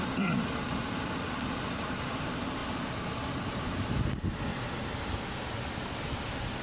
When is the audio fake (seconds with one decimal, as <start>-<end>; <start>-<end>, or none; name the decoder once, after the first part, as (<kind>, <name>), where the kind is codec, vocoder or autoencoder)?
none